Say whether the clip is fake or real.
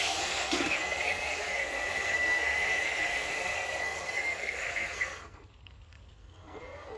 fake